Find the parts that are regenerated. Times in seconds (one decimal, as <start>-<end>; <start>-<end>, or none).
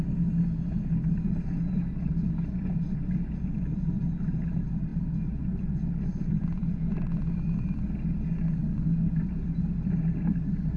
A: none